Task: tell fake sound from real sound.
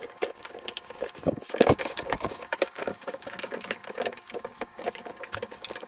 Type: fake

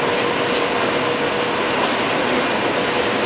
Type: real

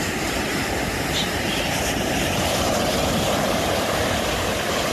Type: fake